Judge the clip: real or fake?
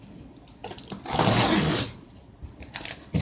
fake